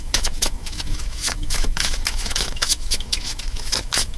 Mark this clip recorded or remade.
remade